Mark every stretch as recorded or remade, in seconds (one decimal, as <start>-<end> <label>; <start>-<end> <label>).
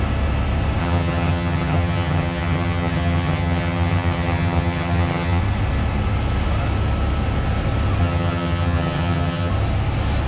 0.0-0.8 recorded; 0.8-5.4 remade; 5.4-8.0 recorded; 8.0-9.5 remade; 9.5-10.3 recorded